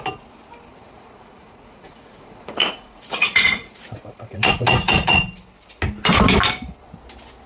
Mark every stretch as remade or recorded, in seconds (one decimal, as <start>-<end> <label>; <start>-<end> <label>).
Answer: 0.0-0.7 recorded; 0.7-5.2 remade; 5.2-7.5 recorded